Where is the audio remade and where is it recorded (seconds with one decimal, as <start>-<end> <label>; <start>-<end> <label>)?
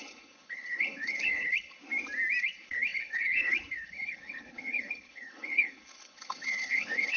0.0-1.8 remade; 1.8-2.4 recorded; 2.4-7.2 remade